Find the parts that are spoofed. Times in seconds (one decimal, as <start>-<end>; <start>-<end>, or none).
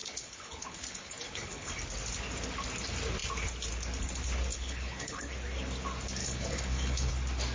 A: 0.0-1.7; 4.5-5.3; 6.2-7.1